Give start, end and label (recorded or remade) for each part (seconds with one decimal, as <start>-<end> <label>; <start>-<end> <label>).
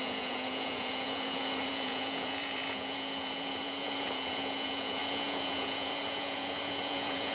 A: 0.0-7.3 remade